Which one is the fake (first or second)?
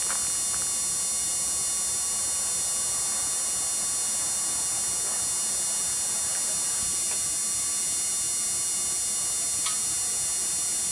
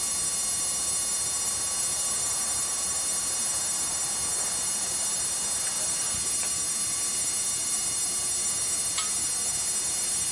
second